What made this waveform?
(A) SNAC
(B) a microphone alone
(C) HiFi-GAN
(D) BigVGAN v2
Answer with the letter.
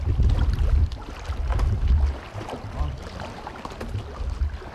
B